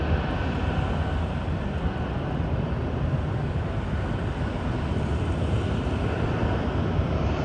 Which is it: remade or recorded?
recorded